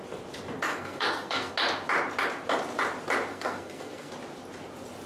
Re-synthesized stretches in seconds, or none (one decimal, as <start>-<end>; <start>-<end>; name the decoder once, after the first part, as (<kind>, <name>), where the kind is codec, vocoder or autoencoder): 0.7-1.5 (codec, SNAC); 3.3-4.1